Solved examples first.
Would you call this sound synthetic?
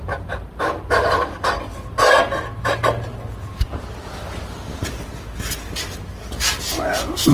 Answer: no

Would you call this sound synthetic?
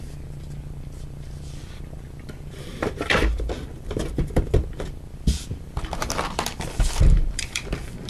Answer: yes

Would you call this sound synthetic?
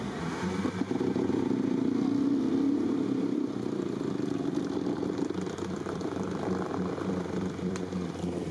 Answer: yes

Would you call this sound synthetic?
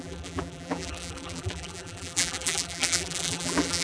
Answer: yes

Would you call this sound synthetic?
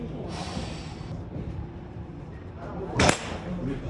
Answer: yes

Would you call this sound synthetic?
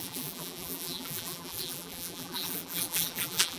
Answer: yes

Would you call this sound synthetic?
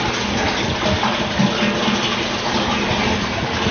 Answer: no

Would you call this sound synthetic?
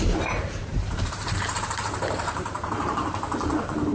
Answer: yes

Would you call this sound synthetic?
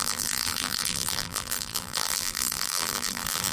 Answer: yes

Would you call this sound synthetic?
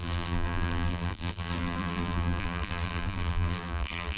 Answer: yes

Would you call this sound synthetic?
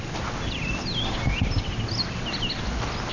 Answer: no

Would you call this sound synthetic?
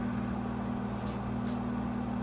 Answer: no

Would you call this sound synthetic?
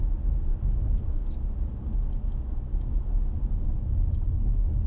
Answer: no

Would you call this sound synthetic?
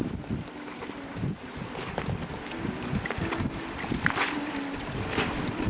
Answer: yes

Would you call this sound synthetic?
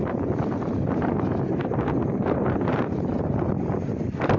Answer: yes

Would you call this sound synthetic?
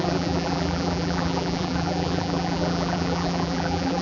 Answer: yes